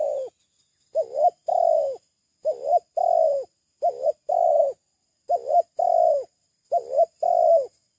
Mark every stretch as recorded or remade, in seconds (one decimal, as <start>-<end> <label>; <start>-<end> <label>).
0.0-8.0 recorded